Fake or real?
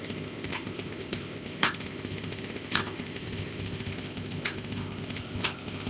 fake